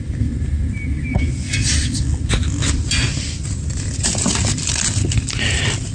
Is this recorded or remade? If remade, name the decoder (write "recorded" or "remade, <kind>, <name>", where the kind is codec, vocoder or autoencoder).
recorded